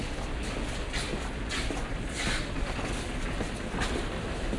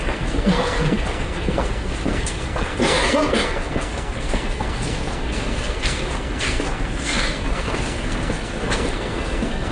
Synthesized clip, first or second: second